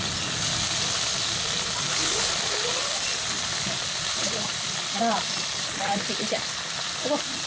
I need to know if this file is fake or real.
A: real